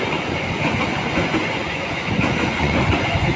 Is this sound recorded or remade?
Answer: remade